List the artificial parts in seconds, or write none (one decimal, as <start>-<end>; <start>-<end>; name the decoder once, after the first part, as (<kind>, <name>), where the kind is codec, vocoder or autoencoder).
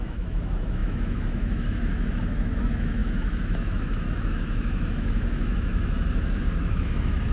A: 0.0-7.3 (autoencoder, DAC-VAE)